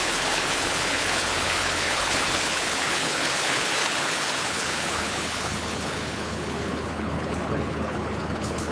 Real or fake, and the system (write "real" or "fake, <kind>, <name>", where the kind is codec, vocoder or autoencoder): fake, codec, HILCodec